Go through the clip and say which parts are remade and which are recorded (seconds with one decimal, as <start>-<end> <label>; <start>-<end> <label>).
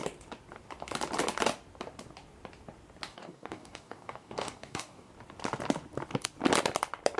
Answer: 0.0-3.1 recorded; 3.1-5.1 remade; 5.1-7.2 recorded